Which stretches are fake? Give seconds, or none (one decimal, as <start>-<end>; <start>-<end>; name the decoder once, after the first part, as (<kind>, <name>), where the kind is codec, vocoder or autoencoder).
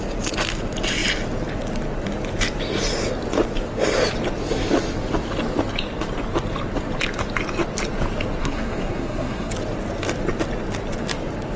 8.4-9.5 (codec, SNAC)